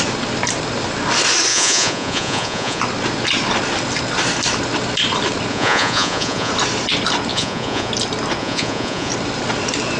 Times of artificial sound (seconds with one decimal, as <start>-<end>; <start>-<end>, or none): 1.5-2.8; 5.5-6.5; 7.3-7.9; 8.4-9.1